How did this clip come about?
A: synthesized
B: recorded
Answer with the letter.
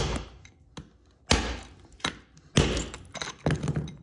B